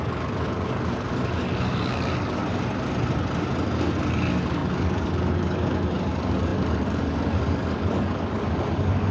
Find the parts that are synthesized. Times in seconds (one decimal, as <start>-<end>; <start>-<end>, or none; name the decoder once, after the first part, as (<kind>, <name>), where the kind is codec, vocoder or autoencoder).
0.0-2.4 (codec, DAC); 4.1-9.1

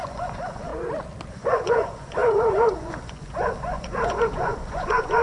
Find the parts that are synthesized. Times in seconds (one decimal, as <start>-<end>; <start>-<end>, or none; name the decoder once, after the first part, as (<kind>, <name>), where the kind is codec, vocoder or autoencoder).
0.0-0.7 (vocoder, Vocos); 1.3-5.2

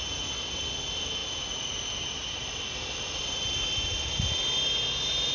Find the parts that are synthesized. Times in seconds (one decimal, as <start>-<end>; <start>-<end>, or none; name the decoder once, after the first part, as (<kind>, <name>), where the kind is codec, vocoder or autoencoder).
none

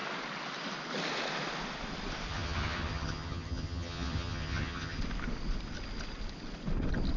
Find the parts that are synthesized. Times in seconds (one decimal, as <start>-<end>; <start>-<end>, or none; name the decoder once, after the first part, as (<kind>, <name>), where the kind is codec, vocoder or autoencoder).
2.3-5.0 (vocoder, HiFi-GAN)

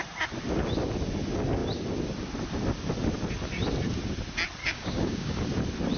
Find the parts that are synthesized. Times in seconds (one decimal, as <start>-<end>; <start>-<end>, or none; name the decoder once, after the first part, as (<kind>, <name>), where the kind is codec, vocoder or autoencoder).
4.6-5.4 (codec, DAC)